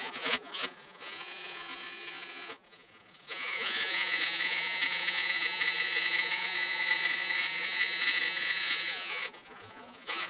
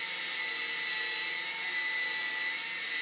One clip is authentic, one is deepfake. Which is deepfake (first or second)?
first